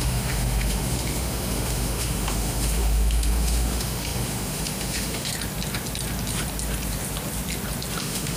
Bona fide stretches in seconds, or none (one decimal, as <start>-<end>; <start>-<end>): 5.3-8.0